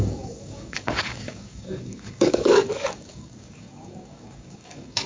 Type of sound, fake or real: fake